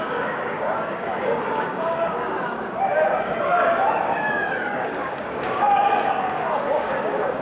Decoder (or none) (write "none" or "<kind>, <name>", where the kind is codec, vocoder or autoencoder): codec, DAC